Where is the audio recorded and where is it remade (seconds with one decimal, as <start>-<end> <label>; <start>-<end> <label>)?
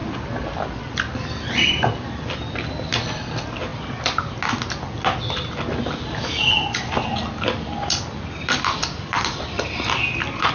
0.0-10.5 recorded